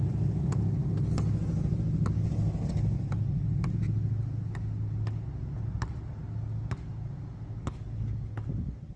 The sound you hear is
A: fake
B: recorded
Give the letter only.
B